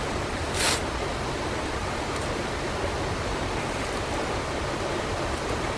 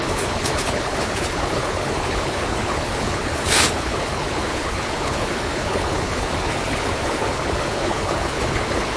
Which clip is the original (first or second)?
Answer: first